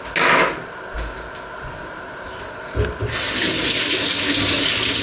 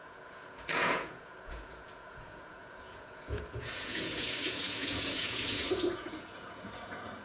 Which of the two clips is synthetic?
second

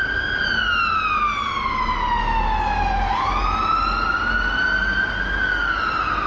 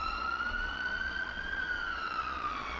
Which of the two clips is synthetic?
second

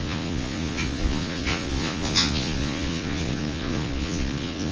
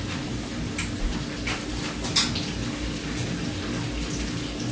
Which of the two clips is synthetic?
first